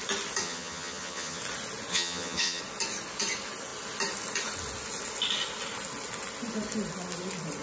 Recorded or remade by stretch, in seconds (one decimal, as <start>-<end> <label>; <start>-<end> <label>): 0.0-0.4 recorded; 0.4-1.4 remade; 1.4-1.9 recorded; 1.9-2.6 remade; 2.6-7.6 recorded